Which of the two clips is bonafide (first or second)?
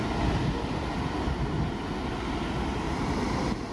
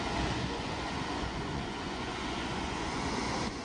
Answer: first